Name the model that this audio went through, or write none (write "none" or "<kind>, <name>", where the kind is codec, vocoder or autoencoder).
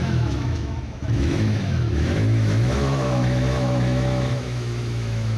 autoencoder, DAC-VAE